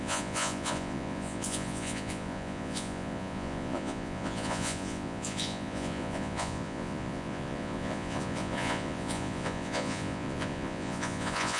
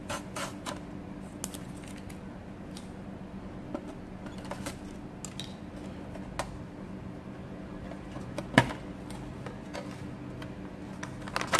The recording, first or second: second